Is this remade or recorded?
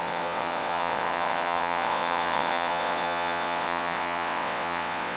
remade